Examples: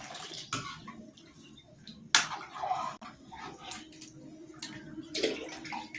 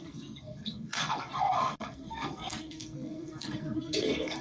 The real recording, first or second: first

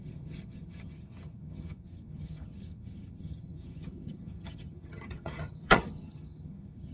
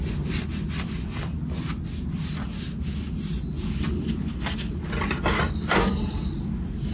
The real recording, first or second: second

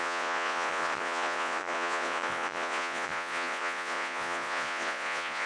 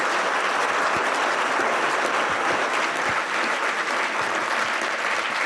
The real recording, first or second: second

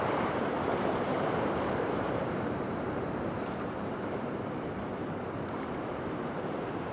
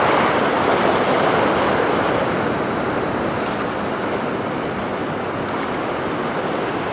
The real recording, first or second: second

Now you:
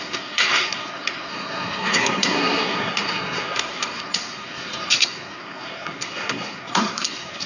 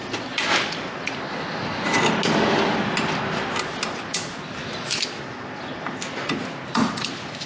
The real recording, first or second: second